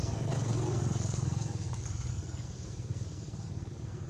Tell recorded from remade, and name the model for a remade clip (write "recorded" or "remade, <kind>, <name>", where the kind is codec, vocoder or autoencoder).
remade, codec, SNAC